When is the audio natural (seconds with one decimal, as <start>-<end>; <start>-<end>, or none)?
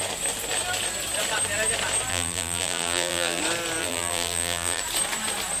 0.0-2.1; 3.4-3.8; 4.8-5.6